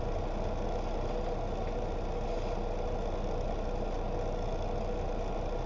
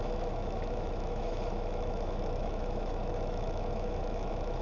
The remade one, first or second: second